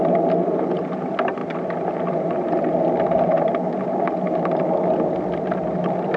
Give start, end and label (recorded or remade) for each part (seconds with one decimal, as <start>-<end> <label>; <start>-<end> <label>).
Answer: 0.0-6.2 recorded

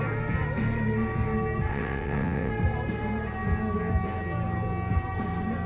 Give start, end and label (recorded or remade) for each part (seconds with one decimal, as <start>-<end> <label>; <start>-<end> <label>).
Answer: 0.0-1.7 recorded; 1.7-2.5 remade; 2.5-5.7 recorded

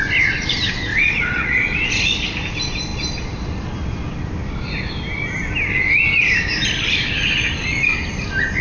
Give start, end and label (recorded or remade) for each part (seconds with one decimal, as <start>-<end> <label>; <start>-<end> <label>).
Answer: 0.0-0.9 recorded; 0.9-1.9 remade; 1.9-8.6 recorded